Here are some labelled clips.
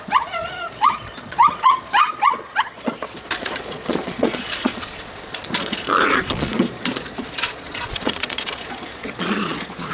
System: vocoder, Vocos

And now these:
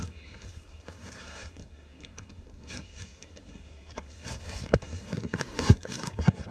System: codec, SNAC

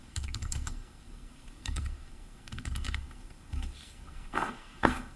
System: codec, SNAC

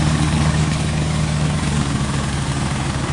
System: codec, DAC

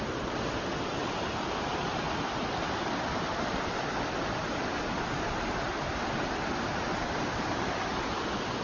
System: none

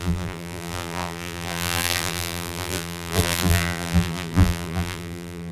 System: vocoder, BigVGAN v2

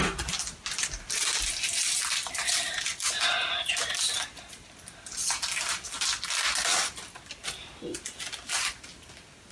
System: none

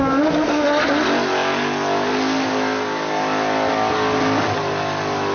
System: none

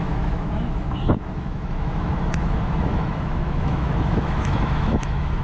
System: autoencoder, DAC-VAE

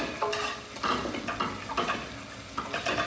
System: none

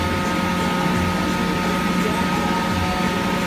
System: none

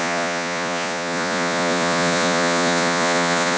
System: vocoder, Vocos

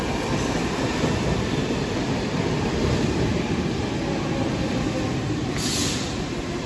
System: none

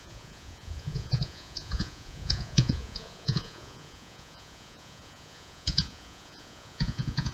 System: vocoder, Vocos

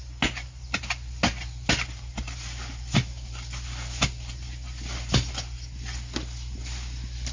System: none